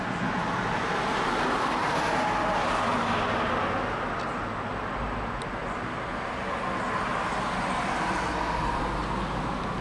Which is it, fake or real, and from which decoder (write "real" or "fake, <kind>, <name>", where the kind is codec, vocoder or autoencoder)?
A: real